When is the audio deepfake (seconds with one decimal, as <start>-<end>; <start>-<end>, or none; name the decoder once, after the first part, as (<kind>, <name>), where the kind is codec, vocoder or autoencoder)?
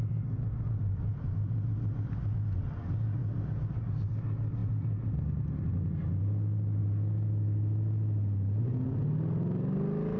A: none